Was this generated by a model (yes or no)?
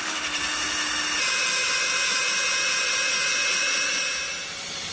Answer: no